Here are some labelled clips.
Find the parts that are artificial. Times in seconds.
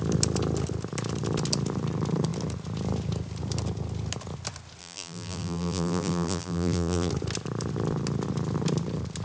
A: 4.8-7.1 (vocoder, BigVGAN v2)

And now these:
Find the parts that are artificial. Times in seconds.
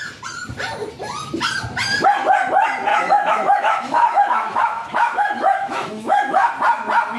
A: 2.9-6.5 (autoencoder, DAC-VAE)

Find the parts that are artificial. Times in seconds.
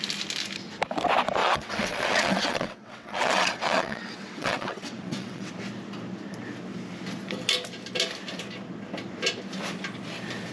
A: 1.4-5.5 (vocoder, WaveNeXt)